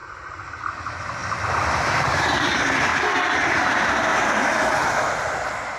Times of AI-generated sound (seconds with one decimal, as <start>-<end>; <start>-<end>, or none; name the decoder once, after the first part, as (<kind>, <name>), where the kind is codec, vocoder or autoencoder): 0.0-0.7 (vocoder, BigVGAN v2); 1.2-2.2; 2.9-3.6; 4.1-4.6